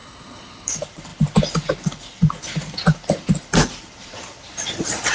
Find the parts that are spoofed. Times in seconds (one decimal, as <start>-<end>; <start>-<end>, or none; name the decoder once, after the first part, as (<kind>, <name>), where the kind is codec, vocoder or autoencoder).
0.0-0.7 (codec, HILCodec)